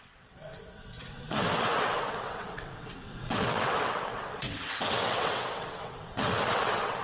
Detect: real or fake fake